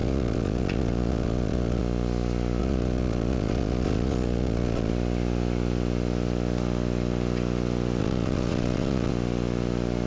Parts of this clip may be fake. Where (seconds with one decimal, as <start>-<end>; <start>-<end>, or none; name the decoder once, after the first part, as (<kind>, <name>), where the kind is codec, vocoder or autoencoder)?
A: 0.0-1.8 (vocoder, Vocos); 2.6-4.9; 8.0-9.1